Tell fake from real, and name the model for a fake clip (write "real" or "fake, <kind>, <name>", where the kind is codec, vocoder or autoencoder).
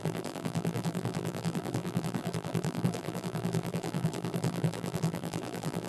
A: fake, vocoder, BigVGAN v2